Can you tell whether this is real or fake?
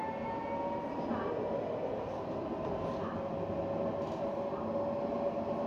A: real